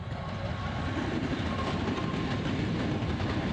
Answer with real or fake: real